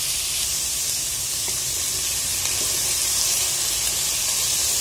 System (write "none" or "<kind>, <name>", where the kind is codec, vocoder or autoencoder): none